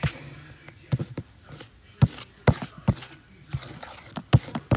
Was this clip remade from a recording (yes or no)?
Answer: no